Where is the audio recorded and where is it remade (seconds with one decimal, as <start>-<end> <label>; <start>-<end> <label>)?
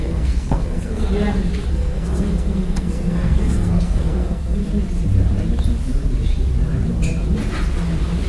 0.0-1.1 remade; 1.1-1.7 recorded; 1.7-4.6 remade; 4.6-8.3 recorded